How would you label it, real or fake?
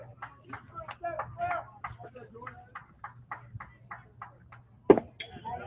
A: real